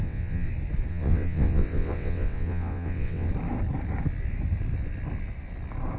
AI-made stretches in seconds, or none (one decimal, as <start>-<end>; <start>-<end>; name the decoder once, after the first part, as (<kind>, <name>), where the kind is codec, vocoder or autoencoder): 0.0-0.5 (vocoder, WaveNeXt); 0.9-3.3

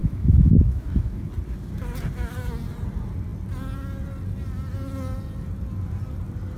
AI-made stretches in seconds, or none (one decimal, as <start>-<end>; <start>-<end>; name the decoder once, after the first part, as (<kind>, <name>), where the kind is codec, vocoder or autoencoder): 0.0-1.3 (autoencoder, DAC-VAE)